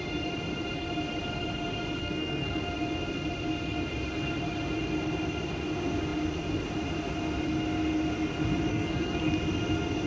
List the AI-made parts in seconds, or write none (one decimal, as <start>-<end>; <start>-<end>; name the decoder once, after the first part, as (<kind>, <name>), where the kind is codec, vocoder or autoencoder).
2.0-2.6 (codec, SNAC); 8.7-9.4